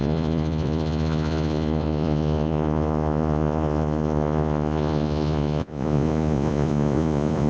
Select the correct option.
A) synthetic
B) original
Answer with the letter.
A